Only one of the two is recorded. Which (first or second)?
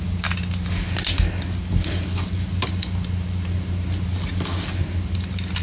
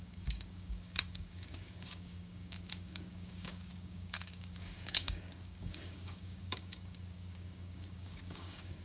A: first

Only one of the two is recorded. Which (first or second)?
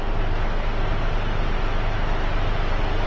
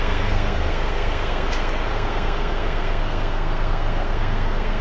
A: first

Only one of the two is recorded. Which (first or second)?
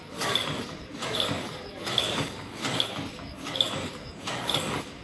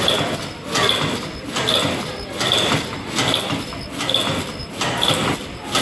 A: second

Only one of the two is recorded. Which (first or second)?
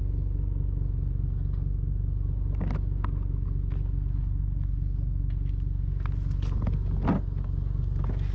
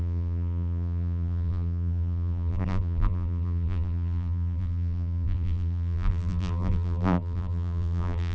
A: first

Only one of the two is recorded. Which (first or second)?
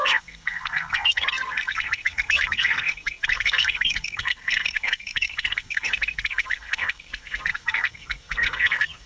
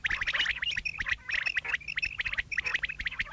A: second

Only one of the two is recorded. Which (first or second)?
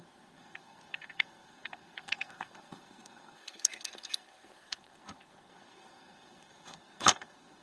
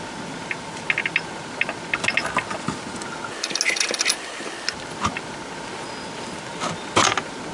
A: second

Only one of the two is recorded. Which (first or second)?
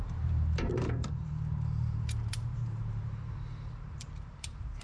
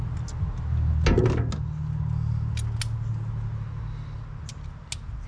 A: second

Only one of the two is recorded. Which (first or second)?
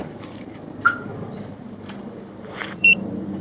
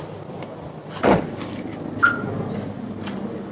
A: second